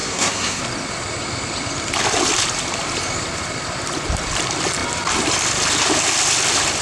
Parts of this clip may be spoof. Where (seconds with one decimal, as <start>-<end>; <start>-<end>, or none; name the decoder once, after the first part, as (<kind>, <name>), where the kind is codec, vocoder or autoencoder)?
0.0-0.6 (codec, SNAC)